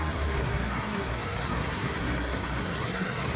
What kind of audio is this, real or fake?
fake